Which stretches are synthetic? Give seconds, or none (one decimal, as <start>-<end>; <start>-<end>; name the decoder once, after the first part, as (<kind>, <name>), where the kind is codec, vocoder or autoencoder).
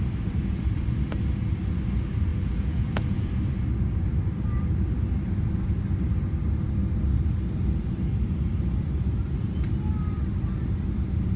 2.3-3.3 (vocoder, Vocos)